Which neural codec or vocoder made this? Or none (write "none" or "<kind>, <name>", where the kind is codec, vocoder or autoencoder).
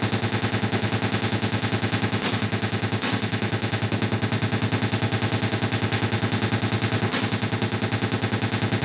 none